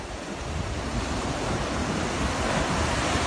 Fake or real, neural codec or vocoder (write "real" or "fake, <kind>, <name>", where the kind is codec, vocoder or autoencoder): real